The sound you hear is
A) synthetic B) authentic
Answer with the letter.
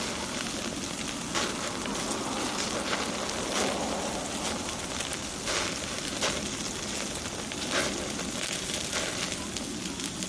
B